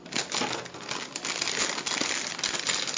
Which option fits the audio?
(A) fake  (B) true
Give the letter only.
B